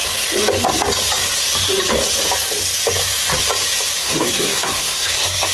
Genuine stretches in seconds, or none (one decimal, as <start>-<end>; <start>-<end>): 0.0-4.0